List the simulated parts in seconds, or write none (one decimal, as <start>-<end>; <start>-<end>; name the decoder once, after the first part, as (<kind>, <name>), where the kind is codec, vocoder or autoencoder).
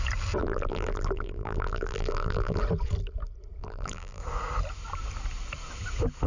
0.4-2.6 (vocoder, BigVGAN v2); 3.6-4.2